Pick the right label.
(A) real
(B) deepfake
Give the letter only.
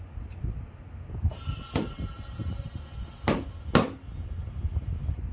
A